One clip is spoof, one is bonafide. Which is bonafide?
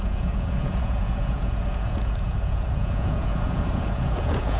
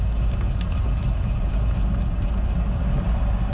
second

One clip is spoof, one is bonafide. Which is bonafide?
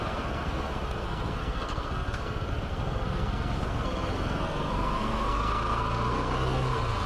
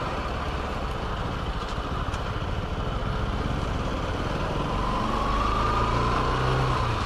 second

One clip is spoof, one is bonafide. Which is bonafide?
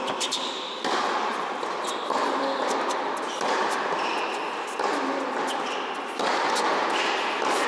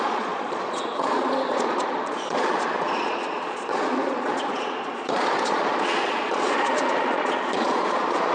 first